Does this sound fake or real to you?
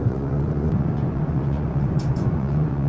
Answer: fake